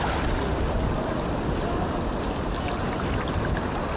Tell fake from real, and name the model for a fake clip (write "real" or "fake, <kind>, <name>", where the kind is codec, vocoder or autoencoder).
real